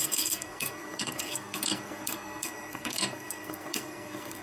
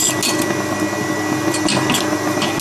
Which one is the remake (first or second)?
first